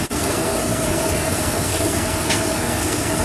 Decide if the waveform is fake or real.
fake